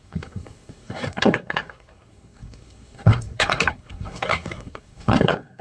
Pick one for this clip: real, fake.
fake